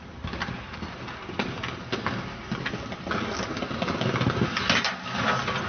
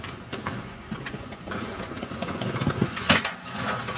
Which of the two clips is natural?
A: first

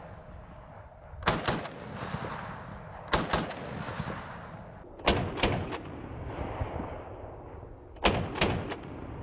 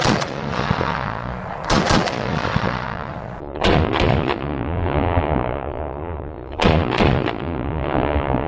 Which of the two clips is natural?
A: first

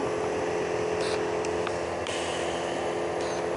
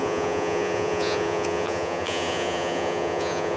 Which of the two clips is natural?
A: first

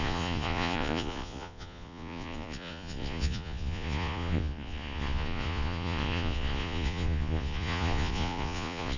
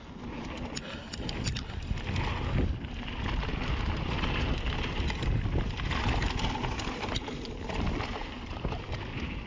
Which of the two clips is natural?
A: second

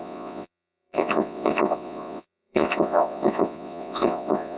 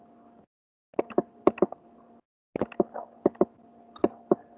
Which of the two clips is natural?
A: second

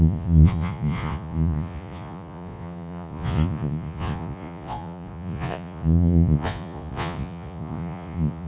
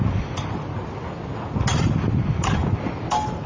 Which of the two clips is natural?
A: second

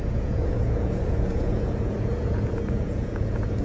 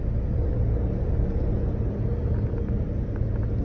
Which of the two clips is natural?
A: second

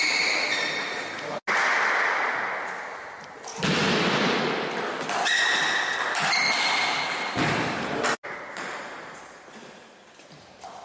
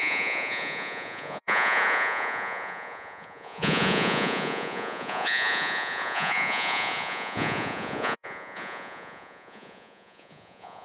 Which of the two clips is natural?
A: first